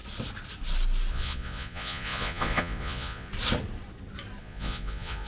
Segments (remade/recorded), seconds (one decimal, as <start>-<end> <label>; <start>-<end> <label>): 0.0-1.1 recorded; 1.1-3.3 remade; 3.3-4.4 recorded; 4.4-5.3 remade